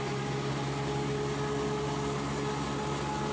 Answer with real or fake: real